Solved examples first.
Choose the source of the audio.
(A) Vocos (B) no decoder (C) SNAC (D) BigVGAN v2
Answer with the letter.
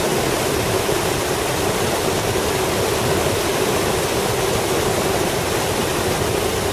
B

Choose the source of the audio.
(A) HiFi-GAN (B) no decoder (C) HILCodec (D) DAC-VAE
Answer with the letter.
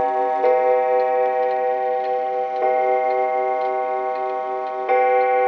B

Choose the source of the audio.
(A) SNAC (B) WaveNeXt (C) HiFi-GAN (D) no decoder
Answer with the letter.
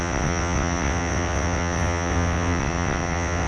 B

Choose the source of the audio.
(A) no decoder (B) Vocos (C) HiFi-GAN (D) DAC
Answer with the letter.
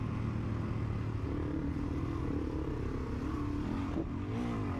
A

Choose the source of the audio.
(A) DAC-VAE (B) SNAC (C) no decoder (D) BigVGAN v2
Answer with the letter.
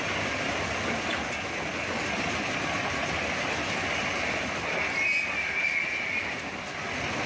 C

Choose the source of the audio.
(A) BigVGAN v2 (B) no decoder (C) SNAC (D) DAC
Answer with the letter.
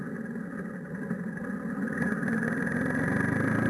B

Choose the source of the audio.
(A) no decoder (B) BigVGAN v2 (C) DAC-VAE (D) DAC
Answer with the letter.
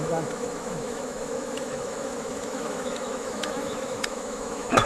C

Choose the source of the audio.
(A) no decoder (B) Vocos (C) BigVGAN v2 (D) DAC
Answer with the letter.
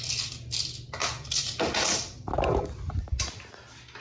A